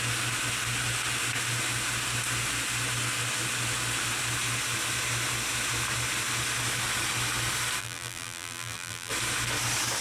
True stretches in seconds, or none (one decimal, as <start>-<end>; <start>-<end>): 0.0-7.8; 9.1-10.0